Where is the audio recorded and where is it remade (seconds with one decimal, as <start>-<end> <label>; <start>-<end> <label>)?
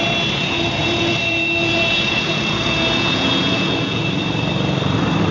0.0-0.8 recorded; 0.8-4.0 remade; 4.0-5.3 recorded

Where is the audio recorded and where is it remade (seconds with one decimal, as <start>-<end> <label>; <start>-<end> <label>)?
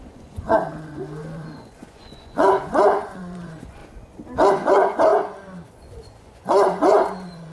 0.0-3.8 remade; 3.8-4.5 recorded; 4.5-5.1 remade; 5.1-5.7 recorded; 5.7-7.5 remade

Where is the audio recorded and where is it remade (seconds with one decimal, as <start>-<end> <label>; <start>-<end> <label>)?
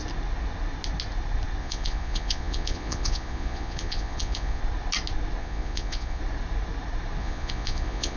0.0-1.6 recorded; 1.6-4.6 remade; 4.6-5.4 recorded; 5.4-6.2 remade; 6.2-7.2 recorded; 7.2-8.2 remade